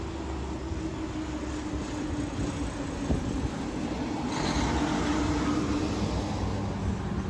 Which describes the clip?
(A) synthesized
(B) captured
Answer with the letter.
B